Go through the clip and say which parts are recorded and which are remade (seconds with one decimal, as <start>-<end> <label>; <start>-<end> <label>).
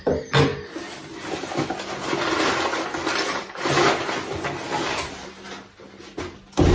0.0-6.7 recorded